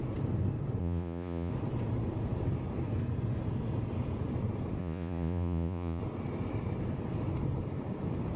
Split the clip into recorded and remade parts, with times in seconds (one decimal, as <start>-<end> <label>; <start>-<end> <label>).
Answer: 0.0-0.8 recorded; 0.8-1.5 remade; 1.5-4.8 recorded; 4.8-6.0 remade; 6.0-8.4 recorded